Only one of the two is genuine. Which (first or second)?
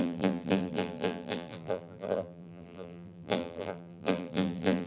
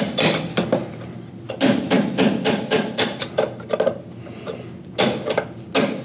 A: second